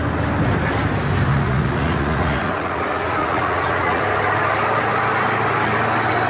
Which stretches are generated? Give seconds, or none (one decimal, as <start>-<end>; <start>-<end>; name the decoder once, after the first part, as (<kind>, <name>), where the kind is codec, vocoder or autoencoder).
1.3-4.0 (vocoder, Vocos)